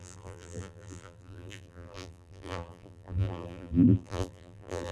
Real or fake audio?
fake